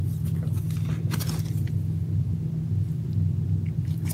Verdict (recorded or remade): recorded